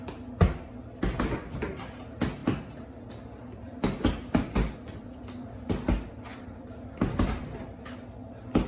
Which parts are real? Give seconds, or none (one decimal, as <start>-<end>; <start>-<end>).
0.0-2.4; 5.7-6.3; 7.0-8.7